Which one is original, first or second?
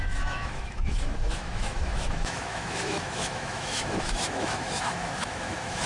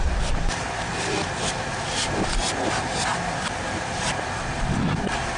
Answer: second